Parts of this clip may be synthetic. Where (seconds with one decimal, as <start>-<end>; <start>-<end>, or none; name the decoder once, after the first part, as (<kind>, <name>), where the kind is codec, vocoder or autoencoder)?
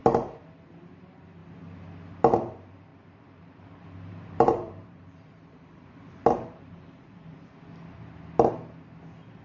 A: 2.9-7.6 (vocoder, BigVGAN v2)